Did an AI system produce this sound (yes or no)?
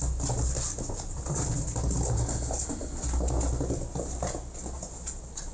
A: no